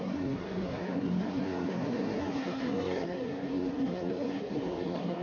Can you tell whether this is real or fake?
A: fake